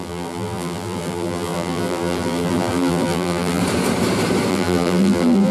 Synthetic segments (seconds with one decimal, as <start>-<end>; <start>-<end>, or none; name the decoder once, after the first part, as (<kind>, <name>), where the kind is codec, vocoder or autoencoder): 0.0-3.6 (vocoder, BigVGAN v2); 4.5-5.5